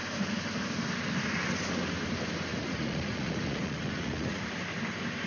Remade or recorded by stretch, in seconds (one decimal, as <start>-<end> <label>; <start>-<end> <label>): 0.0-2.5 recorded; 2.5-4.4 remade; 4.4-5.3 recorded